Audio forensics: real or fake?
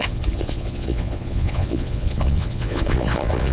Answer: fake